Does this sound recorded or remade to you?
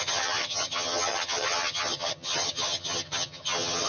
remade